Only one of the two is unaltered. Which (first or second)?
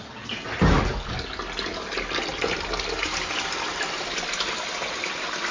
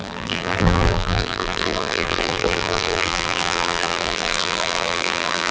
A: first